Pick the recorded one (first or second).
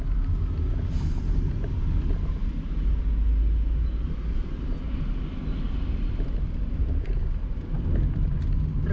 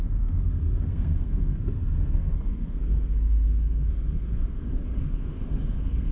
first